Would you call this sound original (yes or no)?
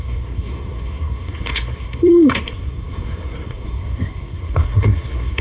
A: no